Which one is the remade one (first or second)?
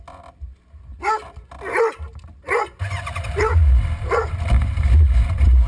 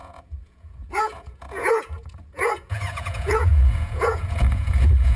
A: second